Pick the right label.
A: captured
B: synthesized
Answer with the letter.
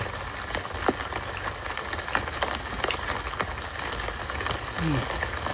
A